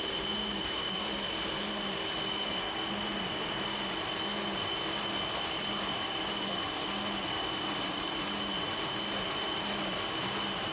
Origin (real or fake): real